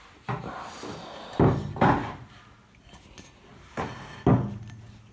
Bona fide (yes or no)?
yes